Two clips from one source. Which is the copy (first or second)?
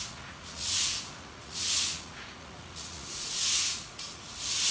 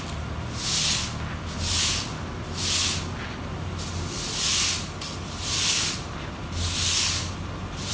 first